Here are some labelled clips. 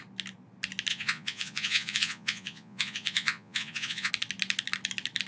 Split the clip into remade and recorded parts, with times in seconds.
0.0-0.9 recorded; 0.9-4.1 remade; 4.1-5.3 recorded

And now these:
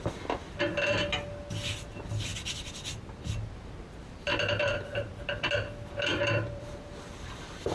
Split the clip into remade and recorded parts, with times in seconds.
0.0-4.3 recorded; 4.3-5.1 remade; 5.1-6.1 recorded; 6.1-7.7 remade

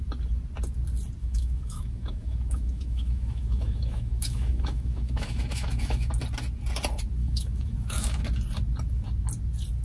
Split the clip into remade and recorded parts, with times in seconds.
0.0-1.2 recorded; 1.2-6.1 remade; 6.1-7.2 recorded; 7.2-8.2 remade; 8.2-9.8 recorded

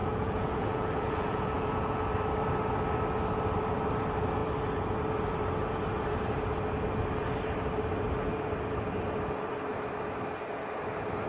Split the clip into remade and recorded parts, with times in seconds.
0.0-2.0 remade; 2.0-11.3 recorded